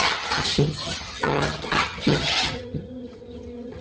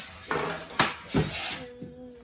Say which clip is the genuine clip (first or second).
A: second